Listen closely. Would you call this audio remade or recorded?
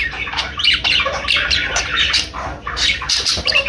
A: remade